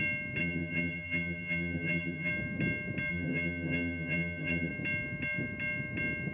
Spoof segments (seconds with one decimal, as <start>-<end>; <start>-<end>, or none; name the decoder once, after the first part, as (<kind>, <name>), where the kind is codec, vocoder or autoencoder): 0.4-2.3 (vocoder, HiFi-GAN); 3.1-4.7